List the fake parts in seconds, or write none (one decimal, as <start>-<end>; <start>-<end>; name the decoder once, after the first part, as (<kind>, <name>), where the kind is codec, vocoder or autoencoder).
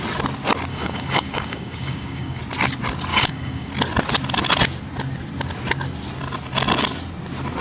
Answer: 0.7-2.4 (codec, DAC); 3.1-3.7